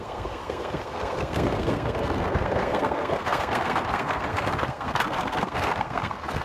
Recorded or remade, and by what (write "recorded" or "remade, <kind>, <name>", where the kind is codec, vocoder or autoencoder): remade, codec, SNAC